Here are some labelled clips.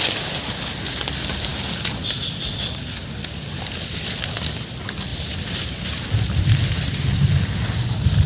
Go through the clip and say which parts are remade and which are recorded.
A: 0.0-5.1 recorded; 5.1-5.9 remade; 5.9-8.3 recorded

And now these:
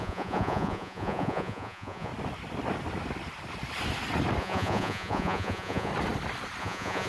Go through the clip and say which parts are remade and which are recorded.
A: 0.0-2.1 remade; 2.1-4.4 recorded; 4.4-5.9 remade; 5.9-6.6 recorded; 6.6-7.1 remade

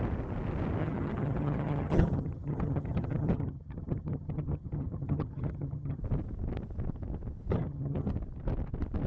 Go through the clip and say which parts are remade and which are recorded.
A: 0.0-0.8 recorded; 0.8-6.0 remade; 6.0-7.5 recorded; 7.5-8.1 remade; 8.1-9.1 recorded

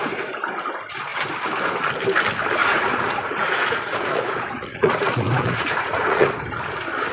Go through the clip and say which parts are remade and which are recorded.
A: 0.0-2.6 recorded; 2.6-6.3 remade; 6.3-7.1 recorded

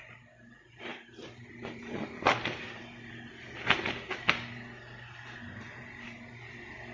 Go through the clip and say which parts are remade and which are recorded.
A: 0.0-0.9 recorded; 0.9-1.9 remade; 1.9-6.9 recorded

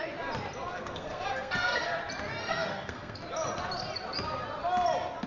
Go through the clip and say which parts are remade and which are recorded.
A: 0.0-0.7 recorded; 0.7-2.0 remade; 2.0-2.4 recorded; 2.4-3.2 remade; 3.2-5.3 recorded

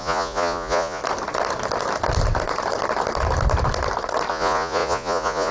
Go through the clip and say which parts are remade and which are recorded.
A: 0.0-1.0 remade; 1.0-4.3 recorded; 4.3-5.5 remade